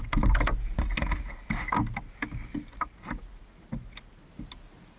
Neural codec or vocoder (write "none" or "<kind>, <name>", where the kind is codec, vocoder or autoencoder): none